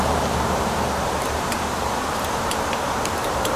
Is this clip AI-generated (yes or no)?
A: yes